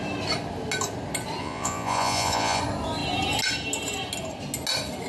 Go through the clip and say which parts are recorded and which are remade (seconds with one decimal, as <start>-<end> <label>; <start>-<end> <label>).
0.0-1.4 recorded; 1.4-2.6 remade; 2.6-5.1 recorded